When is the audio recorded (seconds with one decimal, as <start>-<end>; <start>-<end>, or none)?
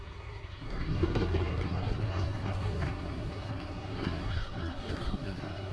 none